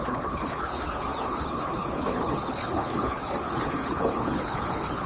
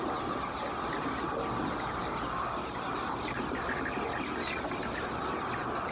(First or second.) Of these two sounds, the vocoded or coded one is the first